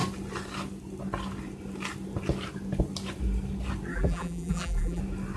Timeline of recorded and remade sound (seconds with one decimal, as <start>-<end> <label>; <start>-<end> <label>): 0.0-3.9 recorded; 3.9-5.0 remade; 5.0-5.4 recorded